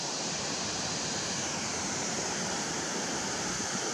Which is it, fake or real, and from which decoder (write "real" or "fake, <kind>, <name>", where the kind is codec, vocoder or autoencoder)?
fake, vocoder, BigVGAN v2